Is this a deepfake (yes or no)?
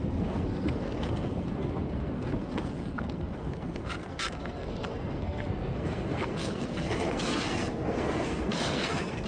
yes